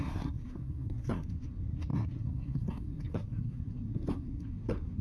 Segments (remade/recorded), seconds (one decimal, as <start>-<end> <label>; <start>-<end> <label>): 0.0-5.0 remade